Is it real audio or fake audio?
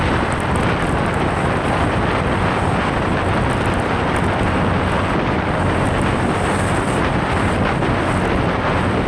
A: real